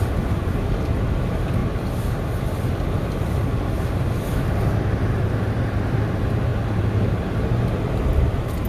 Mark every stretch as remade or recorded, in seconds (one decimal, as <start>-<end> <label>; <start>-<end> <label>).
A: 0.0-8.7 recorded